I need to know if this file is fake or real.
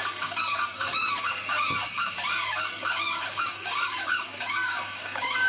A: fake